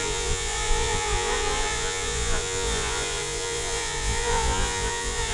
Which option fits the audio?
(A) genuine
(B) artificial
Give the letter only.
B